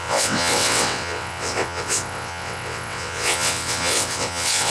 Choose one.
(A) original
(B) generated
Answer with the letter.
B